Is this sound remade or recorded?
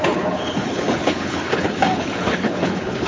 remade